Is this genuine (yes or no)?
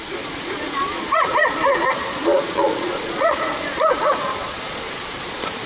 no